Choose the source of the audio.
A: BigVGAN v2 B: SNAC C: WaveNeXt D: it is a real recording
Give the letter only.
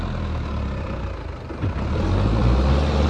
A